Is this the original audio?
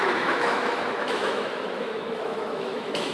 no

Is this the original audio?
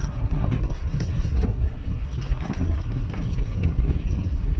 no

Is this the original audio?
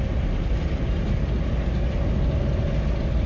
yes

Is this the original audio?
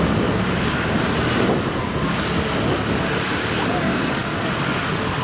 yes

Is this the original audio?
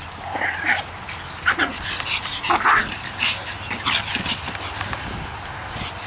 yes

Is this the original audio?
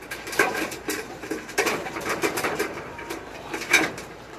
no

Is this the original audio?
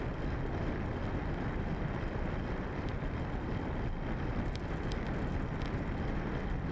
yes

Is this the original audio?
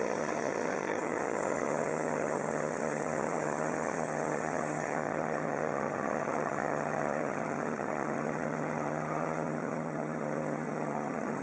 no